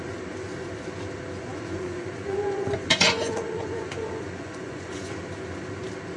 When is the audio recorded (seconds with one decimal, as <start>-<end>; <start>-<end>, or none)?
0.0-1.5; 5.2-6.2